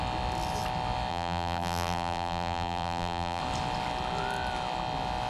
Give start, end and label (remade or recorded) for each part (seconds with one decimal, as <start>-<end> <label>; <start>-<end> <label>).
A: 0.0-1.1 recorded; 1.1-3.4 remade; 3.4-5.3 recorded